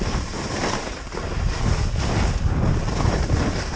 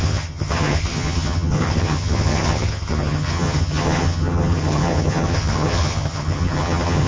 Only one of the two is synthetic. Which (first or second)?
second